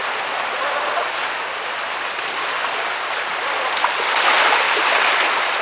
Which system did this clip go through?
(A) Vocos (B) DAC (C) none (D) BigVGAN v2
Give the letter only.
C